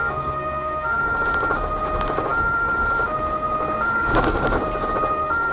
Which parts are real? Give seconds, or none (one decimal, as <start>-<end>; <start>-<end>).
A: 1.0-5.5